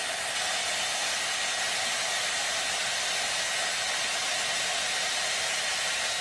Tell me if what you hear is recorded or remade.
recorded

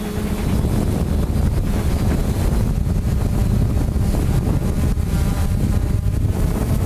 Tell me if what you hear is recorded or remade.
recorded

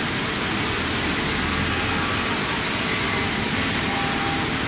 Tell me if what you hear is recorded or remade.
recorded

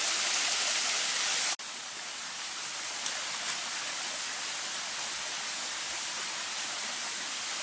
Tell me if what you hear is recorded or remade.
recorded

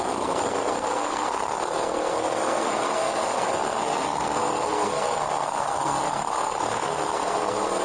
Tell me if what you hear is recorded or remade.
remade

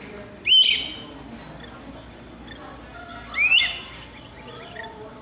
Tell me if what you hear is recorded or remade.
recorded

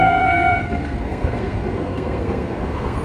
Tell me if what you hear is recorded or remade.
remade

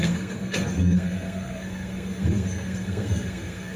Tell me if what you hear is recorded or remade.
remade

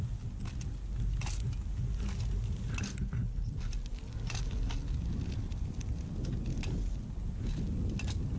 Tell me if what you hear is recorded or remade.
recorded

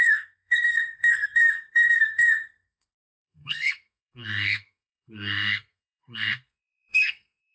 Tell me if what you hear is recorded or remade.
remade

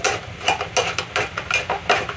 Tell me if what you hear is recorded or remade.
recorded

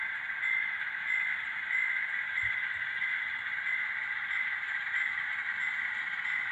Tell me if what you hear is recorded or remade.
recorded